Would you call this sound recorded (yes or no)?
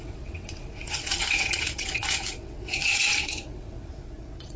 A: no